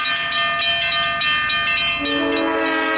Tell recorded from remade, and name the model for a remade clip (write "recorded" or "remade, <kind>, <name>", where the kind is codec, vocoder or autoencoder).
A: recorded